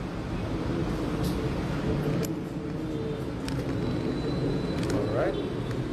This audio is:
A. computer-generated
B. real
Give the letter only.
B